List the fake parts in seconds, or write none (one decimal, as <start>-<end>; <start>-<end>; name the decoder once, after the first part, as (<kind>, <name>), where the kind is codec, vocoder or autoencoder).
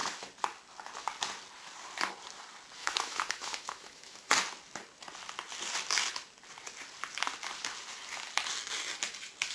2.8-4.3 (autoencoder, DAC-VAE)